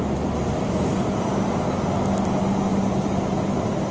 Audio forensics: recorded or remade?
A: recorded